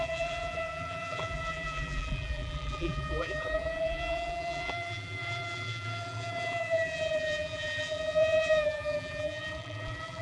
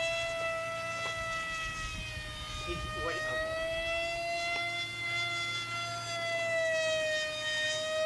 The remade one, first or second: first